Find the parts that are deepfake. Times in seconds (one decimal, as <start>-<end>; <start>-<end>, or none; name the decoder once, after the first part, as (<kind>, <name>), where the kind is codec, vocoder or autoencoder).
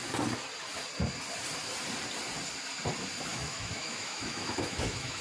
3.3-5.2 (autoencoder, DAC-VAE)